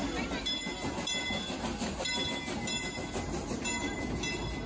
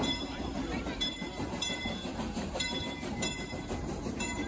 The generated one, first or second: second